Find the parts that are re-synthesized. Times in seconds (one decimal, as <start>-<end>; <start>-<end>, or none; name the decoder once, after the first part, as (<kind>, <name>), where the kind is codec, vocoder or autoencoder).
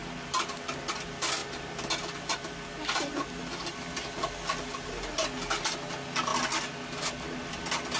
none